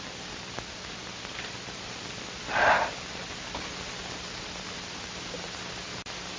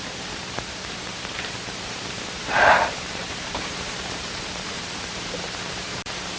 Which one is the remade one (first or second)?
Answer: second